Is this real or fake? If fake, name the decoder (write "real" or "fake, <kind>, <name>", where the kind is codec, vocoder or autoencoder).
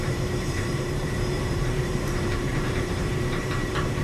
fake, vocoder, BigVGAN v2